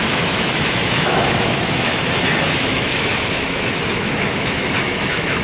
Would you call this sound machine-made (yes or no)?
yes